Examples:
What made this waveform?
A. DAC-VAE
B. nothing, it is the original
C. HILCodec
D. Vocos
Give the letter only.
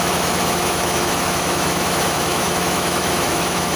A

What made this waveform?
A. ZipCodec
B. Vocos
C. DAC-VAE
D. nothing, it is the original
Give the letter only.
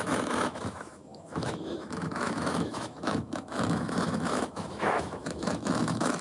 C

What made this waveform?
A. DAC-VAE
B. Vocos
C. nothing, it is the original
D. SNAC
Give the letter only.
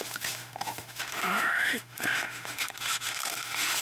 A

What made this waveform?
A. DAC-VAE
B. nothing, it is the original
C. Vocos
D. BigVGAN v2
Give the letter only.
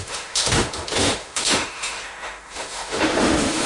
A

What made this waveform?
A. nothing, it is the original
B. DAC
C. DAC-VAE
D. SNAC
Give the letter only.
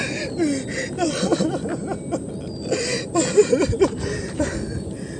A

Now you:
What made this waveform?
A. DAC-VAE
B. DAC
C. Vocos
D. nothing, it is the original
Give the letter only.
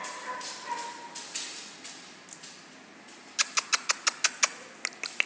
D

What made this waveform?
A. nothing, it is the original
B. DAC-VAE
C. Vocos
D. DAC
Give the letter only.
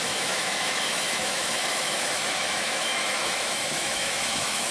B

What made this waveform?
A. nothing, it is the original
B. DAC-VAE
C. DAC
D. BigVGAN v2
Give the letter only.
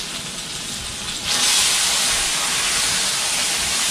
A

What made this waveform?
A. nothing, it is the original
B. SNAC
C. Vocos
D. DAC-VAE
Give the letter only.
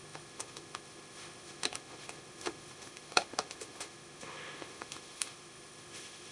D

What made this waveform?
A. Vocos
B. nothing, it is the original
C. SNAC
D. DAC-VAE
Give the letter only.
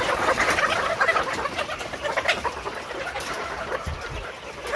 B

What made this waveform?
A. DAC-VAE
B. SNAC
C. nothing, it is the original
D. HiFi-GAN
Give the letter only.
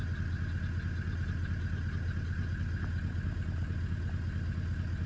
C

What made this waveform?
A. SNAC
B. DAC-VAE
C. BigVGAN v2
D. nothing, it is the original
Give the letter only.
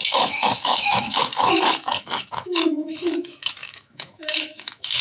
B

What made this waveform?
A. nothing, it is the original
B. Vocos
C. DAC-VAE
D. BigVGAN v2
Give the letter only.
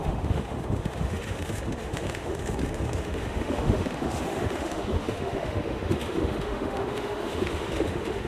C